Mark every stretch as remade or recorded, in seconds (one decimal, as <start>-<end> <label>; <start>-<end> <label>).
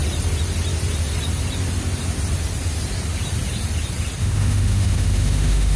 0.0-4.2 recorded; 4.2-5.8 remade